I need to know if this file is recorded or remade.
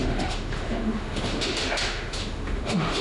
remade